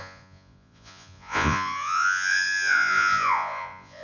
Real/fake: fake